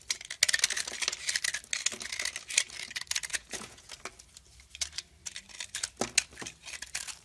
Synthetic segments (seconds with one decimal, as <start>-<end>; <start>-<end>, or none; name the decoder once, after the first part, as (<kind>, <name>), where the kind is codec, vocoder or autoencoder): 3.3-3.9 (vocoder, Vocos)